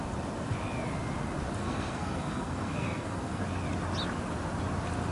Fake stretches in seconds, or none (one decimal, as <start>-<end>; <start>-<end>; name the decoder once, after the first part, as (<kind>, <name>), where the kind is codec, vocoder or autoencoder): 1.6-3.4 (codec, SNAC)